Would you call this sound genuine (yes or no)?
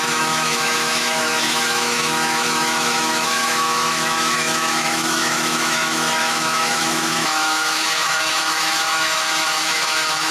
no